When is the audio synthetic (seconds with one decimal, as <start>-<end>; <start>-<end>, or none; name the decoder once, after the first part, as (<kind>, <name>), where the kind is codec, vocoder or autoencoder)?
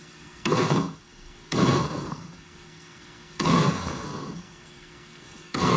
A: 0.0-5.8 (codec, SNAC)